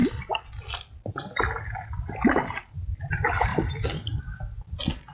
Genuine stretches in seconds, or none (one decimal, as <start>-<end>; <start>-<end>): 0.0-3.5; 4.2-5.1